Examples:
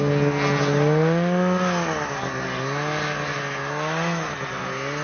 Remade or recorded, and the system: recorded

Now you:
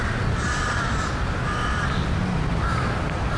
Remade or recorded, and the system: recorded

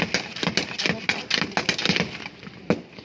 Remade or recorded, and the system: recorded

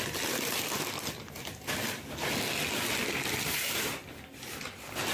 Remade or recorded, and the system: recorded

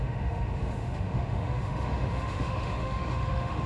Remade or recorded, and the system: remade, autoencoder, DAC-VAE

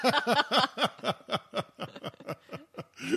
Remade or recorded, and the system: recorded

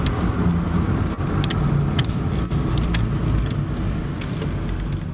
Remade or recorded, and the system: recorded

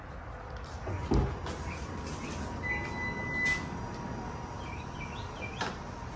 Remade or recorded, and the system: recorded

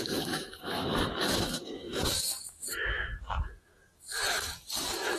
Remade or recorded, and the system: remade, autoencoder, DAC-VAE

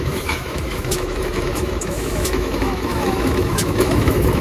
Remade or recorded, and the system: remade, autoencoder, DAC-VAE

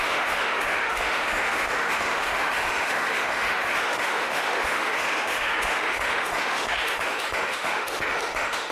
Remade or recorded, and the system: remade, autoencoder, DAC-VAE